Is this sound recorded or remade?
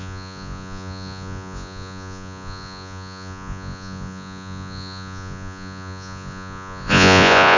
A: remade